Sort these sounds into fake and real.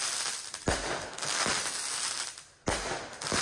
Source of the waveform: real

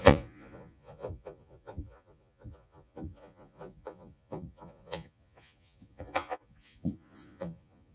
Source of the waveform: fake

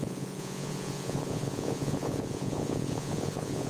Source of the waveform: fake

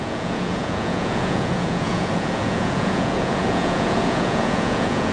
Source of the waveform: fake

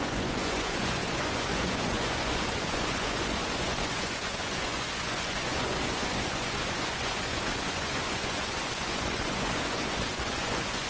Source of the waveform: fake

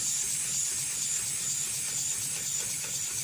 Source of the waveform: real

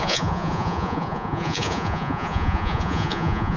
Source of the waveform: fake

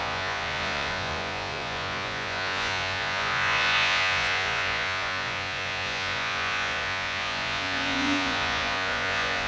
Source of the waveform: fake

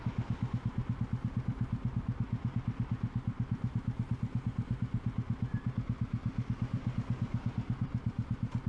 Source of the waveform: real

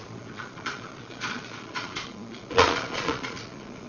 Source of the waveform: fake